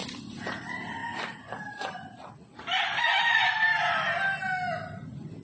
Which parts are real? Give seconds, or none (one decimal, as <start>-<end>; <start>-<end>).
0.0-5.4